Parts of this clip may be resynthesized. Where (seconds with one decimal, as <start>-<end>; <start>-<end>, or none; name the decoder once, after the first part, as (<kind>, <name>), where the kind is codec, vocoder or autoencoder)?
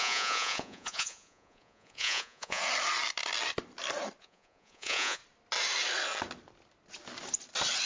0.0-2.6 (vocoder, Vocos); 4.2-5.2